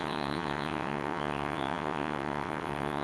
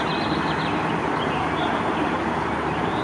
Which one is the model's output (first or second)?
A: first